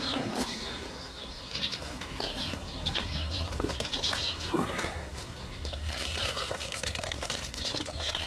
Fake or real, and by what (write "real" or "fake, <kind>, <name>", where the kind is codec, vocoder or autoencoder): fake, codec, SNAC